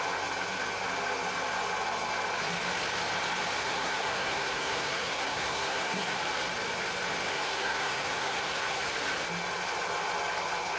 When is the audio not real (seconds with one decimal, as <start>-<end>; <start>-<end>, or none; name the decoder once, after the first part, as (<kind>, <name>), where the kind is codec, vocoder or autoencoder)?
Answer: 3.6-6.2 (codec, SNAC); 7.3-8.9